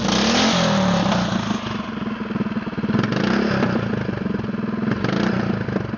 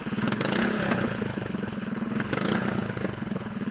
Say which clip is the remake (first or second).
second